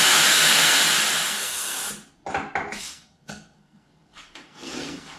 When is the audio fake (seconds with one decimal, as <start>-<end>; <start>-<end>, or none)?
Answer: 0.0-0.8; 1.3-1.8; 2.8-5.2